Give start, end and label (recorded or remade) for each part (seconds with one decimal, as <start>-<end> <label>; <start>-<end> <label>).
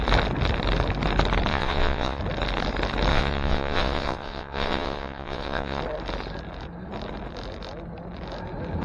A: 0.0-1.5 recorded; 1.5-2.2 remade; 2.2-3.1 recorded; 3.1-5.8 remade; 5.8-8.8 recorded